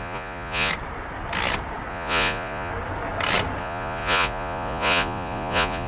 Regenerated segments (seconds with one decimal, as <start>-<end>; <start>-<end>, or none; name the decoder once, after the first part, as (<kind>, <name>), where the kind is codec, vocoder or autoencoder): 0.0-0.7 (vocoder, Vocos); 1.9-2.7; 3.6-5.9